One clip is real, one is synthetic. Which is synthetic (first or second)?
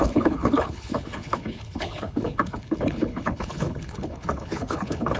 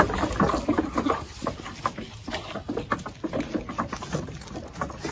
first